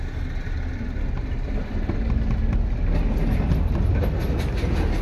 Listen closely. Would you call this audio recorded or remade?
recorded